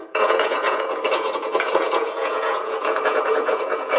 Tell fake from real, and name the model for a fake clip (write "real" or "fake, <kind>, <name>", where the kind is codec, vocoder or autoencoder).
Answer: fake, vocoder, Vocos